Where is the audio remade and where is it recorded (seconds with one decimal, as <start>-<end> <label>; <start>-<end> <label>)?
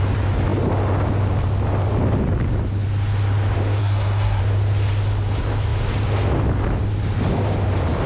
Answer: 0.0-3.8 recorded; 3.8-4.4 remade; 4.4-8.1 recorded